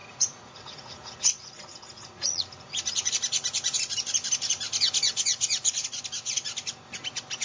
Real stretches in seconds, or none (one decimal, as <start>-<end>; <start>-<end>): 3.1-5.3; 6.0-7.4